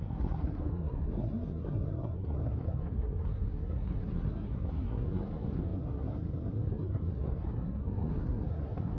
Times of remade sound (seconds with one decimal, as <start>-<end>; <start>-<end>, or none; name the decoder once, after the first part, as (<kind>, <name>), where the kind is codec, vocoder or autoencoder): 0.0-9.0 (codec, SNAC)